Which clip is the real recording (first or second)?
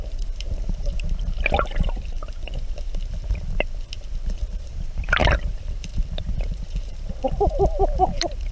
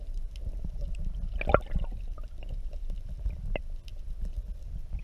second